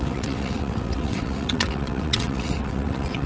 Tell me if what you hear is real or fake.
fake